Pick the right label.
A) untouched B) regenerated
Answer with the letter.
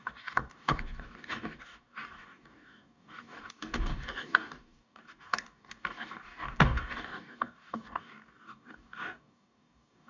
B